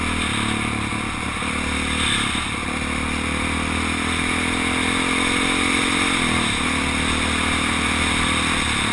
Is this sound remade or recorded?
recorded